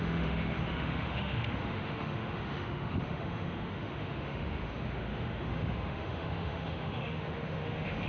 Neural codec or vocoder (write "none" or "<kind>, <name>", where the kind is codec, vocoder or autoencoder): autoencoder, DAC-VAE